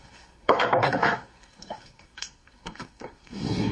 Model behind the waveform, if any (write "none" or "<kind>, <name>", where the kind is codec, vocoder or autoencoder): codec, SNAC